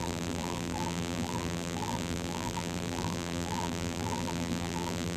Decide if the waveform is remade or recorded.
remade